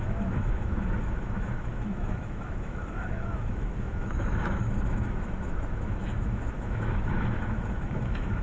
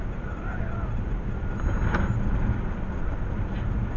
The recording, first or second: second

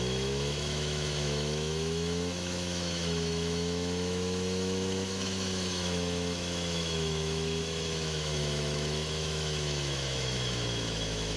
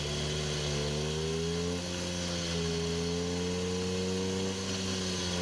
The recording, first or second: second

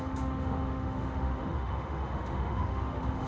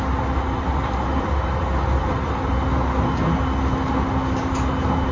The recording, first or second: second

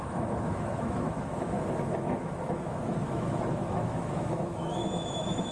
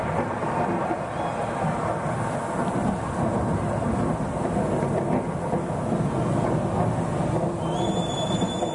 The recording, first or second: second